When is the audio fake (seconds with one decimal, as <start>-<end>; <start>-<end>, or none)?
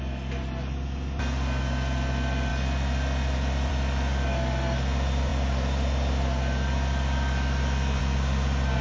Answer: none